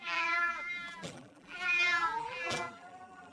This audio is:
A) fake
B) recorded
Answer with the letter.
A